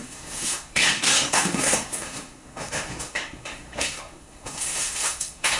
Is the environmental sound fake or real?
fake